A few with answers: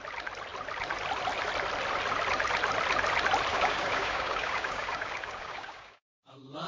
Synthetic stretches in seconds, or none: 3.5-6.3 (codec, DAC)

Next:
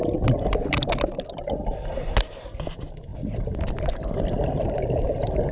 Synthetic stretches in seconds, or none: none

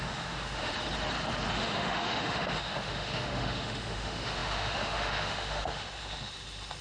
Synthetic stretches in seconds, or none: 0.0-0.7 (autoencoder, DAC-VAE); 1.5-6.8

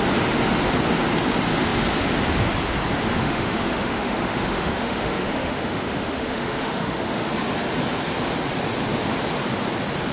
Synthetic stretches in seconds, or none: 3.2-7.3 (autoencoder, DAC-VAE)